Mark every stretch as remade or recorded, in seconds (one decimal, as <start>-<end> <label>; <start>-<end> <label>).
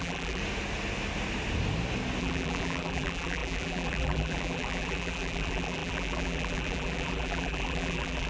0.0-0.4 remade; 0.4-2.2 recorded; 2.2-8.3 remade